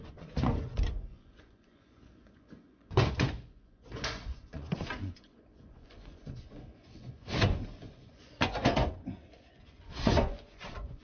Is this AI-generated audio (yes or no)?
yes